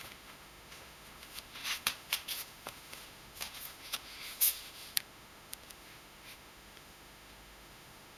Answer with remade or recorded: remade